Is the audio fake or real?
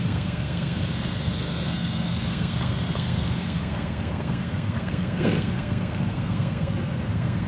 fake